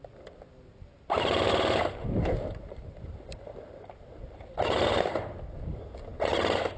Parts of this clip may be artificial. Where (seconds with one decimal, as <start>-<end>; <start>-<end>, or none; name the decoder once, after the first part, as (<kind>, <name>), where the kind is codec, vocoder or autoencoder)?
1.5-5.0 (vocoder, BigVGAN v2)